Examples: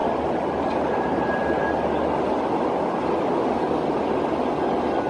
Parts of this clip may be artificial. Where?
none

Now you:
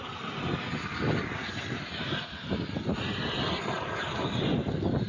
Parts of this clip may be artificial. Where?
none

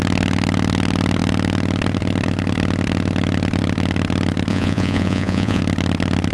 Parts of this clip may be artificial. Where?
4.5-5.6 (vocoder, Vocos)

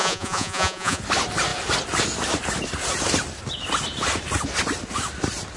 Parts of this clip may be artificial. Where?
0.0-1.0 (vocoder, Vocos)

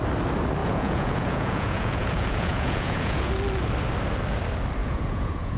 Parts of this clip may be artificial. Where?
0.6-3.3 (vocoder, Vocos); 4.8-5.6